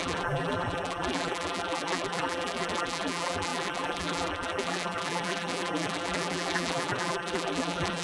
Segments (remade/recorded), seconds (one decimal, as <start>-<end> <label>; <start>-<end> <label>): 0.0-8.0 remade